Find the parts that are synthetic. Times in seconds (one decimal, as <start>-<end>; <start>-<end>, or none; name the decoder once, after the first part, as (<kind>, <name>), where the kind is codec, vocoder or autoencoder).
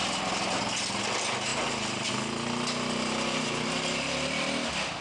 1.5-2.1 (vocoder, BigVGAN v2)